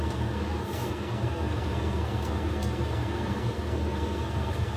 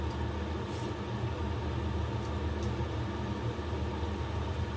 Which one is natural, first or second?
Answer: second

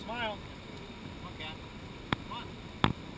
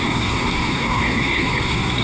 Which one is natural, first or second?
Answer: first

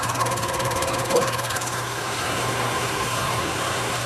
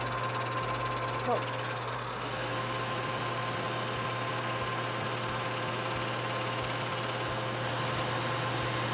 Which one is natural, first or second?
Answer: second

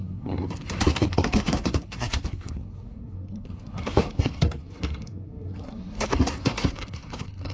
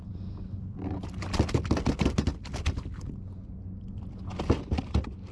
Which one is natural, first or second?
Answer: second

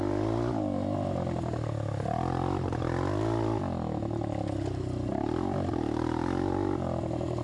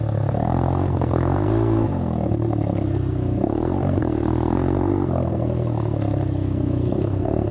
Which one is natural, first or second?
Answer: first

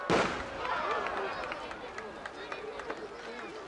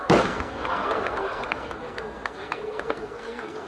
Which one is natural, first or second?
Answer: first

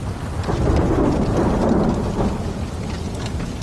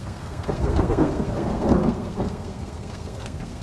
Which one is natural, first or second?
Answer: first